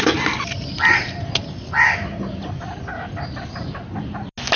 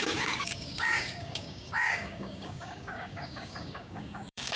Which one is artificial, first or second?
second